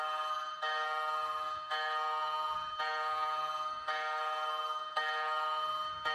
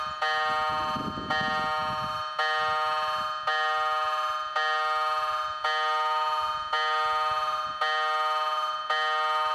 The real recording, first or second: second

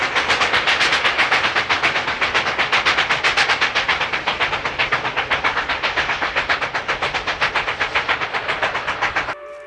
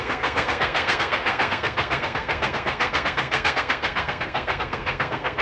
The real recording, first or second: first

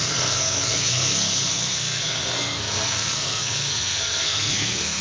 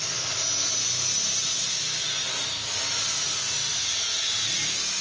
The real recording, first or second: second